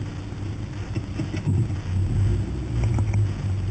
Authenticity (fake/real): real